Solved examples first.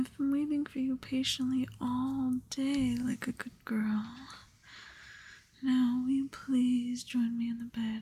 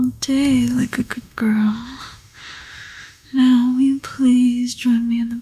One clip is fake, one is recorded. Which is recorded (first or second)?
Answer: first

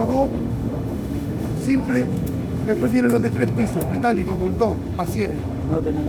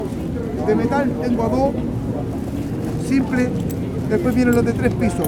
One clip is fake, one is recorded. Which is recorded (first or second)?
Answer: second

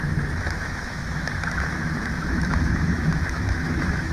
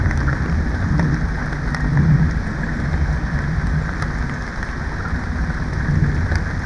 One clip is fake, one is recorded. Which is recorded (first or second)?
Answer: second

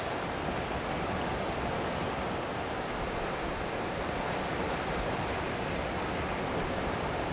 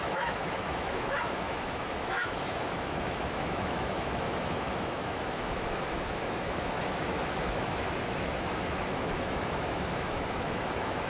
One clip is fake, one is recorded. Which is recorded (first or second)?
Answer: first